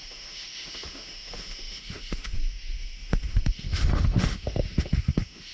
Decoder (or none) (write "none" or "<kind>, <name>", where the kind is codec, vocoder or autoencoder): autoencoder, DAC-VAE